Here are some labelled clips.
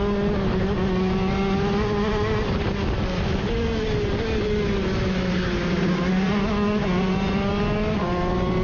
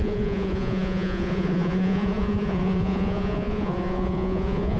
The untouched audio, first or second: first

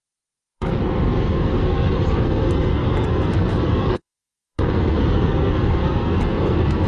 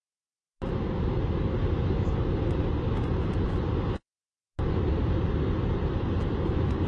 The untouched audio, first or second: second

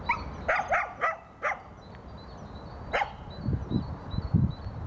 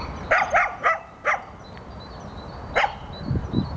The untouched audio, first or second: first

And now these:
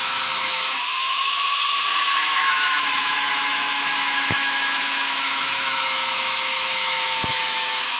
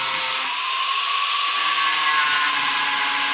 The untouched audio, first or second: second